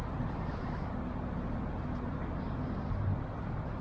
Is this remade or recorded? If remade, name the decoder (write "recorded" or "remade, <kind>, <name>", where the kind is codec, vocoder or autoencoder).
recorded